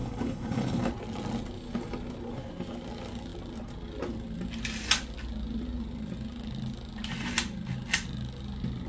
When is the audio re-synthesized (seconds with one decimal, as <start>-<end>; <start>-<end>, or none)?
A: 0.0-0.9